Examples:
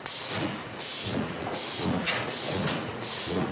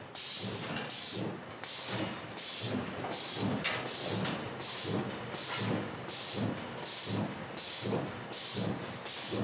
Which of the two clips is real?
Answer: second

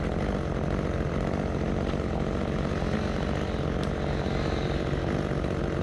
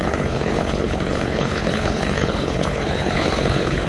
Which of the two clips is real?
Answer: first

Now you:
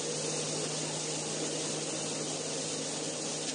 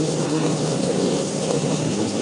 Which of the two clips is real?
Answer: first